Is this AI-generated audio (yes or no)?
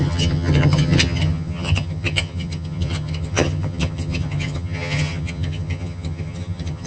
yes